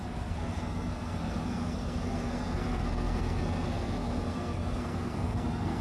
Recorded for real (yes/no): no